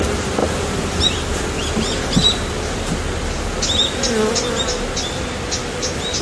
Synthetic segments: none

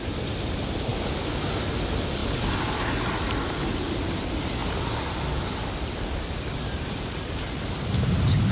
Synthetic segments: 2.2-2.8 (vocoder, BigVGAN v2)

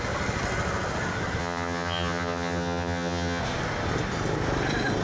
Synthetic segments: 1.4-3.4 (vocoder, HiFi-GAN)

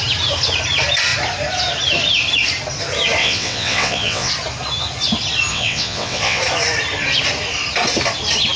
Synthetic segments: 3.2-4.3 (vocoder, WaveNeXt); 5.5-6.4

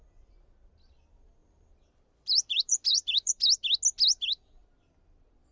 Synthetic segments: 1.4-3.3 (vocoder, BigVGAN v2)

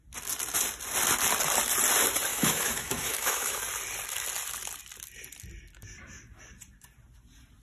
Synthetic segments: 2.3-3.6 (autoencoder, DAC-VAE)

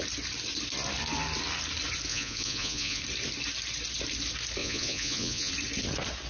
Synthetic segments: 2.1-3.0 (vocoder, Vocos); 4.6-5.5